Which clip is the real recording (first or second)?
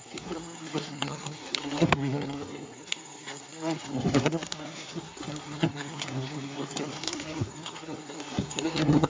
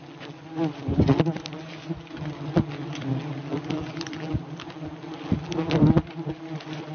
second